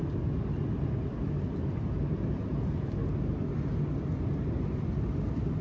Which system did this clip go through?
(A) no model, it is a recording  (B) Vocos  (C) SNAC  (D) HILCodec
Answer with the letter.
A